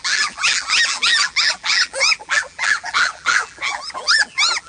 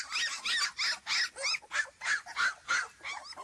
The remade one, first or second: first